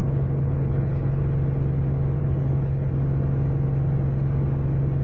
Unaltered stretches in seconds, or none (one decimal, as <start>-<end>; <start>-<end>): 1.2-2.2; 2.9-5.0